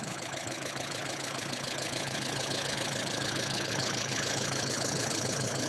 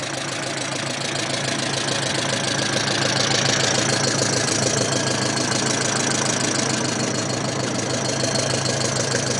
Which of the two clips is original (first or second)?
second